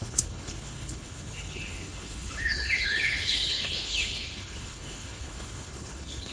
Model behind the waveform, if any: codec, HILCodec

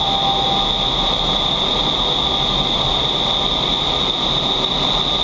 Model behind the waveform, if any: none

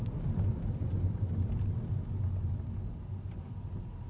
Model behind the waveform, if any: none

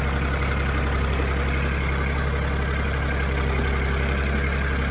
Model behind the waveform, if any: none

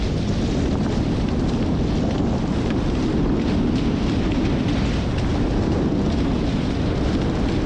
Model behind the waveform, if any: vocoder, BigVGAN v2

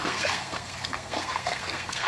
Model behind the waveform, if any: codec, SNAC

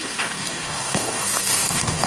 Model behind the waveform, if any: codec, DAC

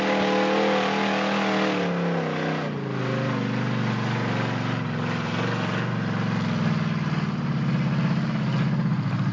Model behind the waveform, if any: none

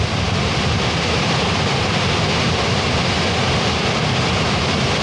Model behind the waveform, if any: none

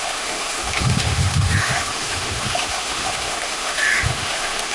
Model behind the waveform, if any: autoencoder, DAC-VAE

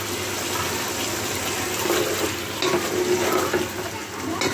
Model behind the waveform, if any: none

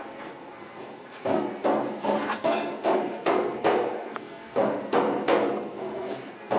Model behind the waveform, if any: codec, SNAC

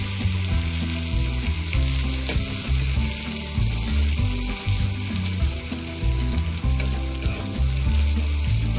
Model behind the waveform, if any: none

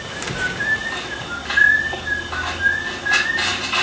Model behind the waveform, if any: none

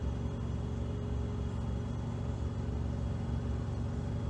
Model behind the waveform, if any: none